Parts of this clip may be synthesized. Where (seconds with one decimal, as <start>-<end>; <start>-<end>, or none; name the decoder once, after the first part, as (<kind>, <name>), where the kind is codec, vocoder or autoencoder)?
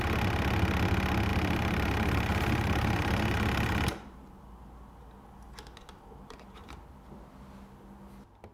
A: 1.3-4.4 (vocoder, BigVGAN v2)